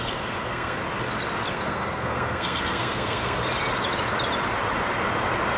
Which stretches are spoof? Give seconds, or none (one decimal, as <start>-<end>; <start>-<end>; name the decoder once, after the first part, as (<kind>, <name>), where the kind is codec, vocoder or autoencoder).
0.0-0.8 (codec, SNAC); 1.5-3.4